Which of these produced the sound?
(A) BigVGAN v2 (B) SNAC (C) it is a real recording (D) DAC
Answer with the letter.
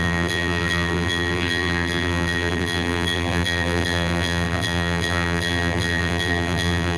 A